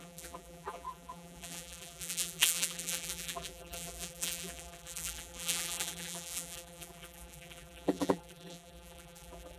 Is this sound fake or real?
fake